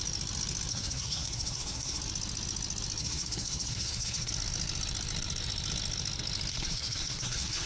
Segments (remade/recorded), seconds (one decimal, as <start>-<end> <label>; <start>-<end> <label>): 0.0-0.7 recorded; 0.7-2.0 remade; 2.0-3.0 recorded; 3.0-4.3 remade; 4.3-6.5 recorded; 6.5-7.7 remade